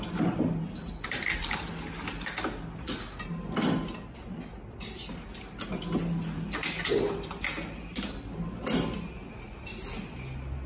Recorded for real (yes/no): yes